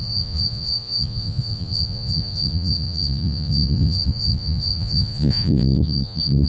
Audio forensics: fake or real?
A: fake